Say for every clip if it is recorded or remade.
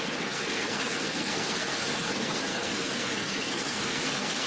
remade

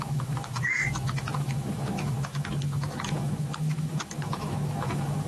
remade